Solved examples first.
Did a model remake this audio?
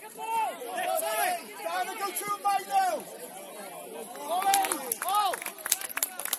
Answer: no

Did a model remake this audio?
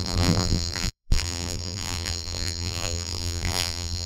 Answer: yes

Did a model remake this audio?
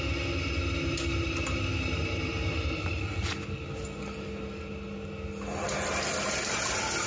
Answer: no